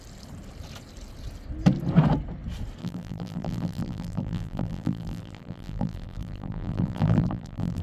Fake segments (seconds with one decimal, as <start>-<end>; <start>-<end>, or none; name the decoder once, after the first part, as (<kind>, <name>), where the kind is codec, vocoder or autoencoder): 2.8-7.8 (vocoder, BigVGAN v2)